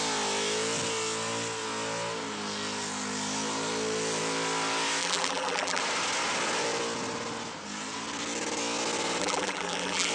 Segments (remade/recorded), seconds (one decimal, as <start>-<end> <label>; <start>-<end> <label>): 0.0-5.0 recorded; 5.0-5.8 remade; 5.8-9.2 recorded; 9.2-10.1 remade